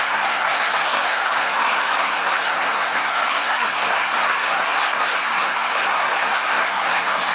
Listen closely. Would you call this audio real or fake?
fake